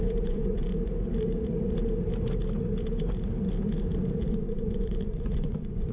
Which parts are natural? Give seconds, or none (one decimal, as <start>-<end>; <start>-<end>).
0.7-4.2